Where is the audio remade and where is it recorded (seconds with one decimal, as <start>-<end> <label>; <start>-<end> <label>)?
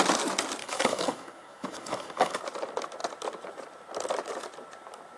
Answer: 0.0-0.6 recorded; 0.6-2.4 remade; 2.4-5.2 recorded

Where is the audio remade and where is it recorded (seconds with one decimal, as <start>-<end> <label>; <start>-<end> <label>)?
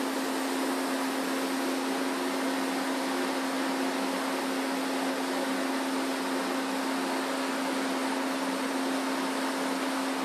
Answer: 0.0-10.2 recorded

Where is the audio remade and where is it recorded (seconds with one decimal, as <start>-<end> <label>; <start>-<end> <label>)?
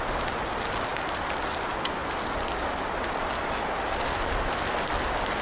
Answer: 0.0-5.4 recorded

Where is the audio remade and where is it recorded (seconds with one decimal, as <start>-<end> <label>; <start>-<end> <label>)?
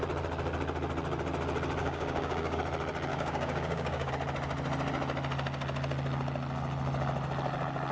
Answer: 0.0-1.8 recorded; 1.8-2.6 remade; 2.6-3.1 recorded; 3.1-4.1 remade; 4.1-7.9 recorded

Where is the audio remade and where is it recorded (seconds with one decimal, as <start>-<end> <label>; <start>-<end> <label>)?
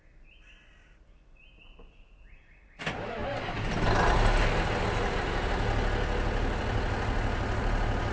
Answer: 0.0-8.1 recorded